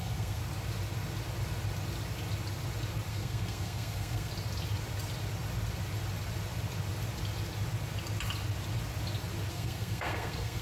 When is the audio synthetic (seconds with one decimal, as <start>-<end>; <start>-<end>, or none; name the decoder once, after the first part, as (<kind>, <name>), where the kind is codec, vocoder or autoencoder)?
0.0-0.4 (codec, SNAC); 3.1-4.3; 9.5-10.6